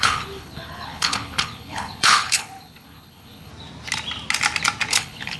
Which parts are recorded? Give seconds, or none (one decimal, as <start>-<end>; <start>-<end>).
3.5-4.9